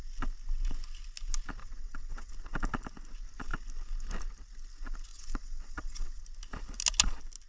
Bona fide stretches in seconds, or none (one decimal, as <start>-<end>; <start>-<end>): 0.0-1.6; 2.3-5.1; 6.2-7.5